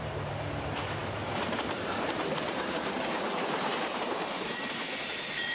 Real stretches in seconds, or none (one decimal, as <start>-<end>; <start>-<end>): none